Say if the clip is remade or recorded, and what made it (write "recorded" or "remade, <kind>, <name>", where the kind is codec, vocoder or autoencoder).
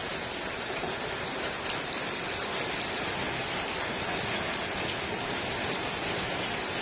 recorded